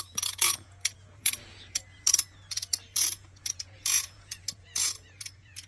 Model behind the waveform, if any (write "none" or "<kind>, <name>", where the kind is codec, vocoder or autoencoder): vocoder, Vocos